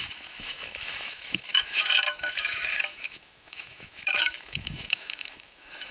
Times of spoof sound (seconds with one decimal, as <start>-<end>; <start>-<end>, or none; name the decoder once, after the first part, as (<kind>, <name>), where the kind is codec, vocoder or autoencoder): 0.0-5.9 (autoencoder, DAC-VAE)

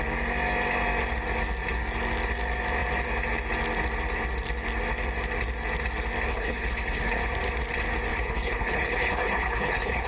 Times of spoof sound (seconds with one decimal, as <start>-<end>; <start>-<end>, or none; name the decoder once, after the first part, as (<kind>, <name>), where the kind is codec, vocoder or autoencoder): 6.3-7.2 (codec, HILCodec); 8.1-10.1

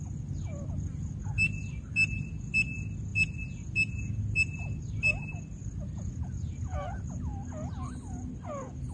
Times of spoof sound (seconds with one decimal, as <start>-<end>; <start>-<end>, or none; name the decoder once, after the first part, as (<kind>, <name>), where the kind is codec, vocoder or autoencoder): none

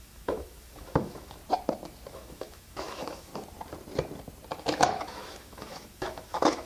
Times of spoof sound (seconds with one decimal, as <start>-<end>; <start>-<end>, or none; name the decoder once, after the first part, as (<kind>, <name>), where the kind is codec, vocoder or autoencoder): 0.0-1.4 (autoencoder, DAC-VAE); 2.1-3.3; 4.6-6.7

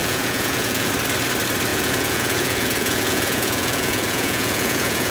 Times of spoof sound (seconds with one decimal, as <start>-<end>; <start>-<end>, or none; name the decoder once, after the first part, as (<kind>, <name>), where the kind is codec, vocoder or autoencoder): 0.0-0.9 (vocoder, Vocos); 1.7-5.1